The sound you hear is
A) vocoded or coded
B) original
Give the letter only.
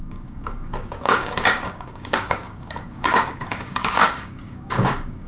A